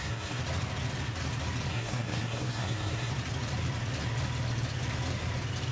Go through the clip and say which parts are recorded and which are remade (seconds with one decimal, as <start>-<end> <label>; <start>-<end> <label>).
0.0-0.4 remade; 0.4-1.7 recorded; 1.7-3.1 remade; 3.1-5.7 recorded